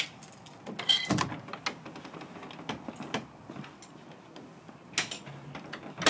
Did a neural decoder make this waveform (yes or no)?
no